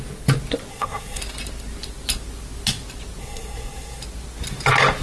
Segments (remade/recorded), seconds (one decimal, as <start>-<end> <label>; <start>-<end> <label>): 0.0-0.7 recorded; 0.7-1.2 remade; 1.2-3.2 recorded; 3.2-4.0 remade; 4.0-5.0 recorded